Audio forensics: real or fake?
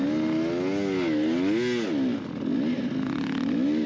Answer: real